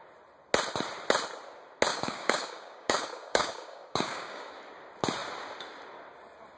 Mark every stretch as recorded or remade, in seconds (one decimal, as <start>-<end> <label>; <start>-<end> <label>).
0.0-1.9 recorded; 1.9-4.5 remade; 4.5-6.6 recorded